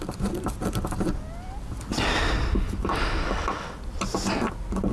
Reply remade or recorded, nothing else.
recorded